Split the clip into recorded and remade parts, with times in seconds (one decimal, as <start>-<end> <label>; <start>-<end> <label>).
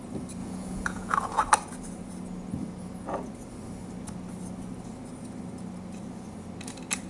0.0-0.4 recorded; 0.4-1.4 remade; 1.4-7.1 recorded